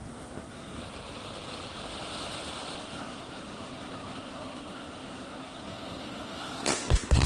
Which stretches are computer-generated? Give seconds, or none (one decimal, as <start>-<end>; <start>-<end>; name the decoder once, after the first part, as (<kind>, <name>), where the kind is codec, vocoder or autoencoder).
0.0-0.8 (codec, SNAC); 2.8-7.3